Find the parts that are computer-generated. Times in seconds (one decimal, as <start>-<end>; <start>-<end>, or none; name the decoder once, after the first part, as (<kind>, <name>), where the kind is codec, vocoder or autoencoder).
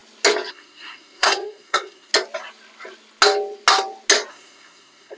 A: 0.5-2.1 (codec, SNAC); 4.3-5.2